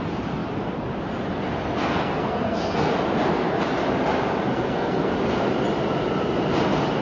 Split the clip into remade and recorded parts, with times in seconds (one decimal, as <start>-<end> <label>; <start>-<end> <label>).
0.0-1.8 recorded; 1.8-2.9 remade; 2.9-4.5 recorded; 4.5-5.1 remade; 5.1-7.0 recorded